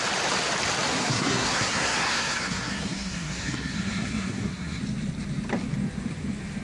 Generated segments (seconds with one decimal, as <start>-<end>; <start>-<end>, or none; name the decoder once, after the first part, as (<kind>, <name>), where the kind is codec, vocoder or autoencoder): 0.9-4.8 (codec, SNAC)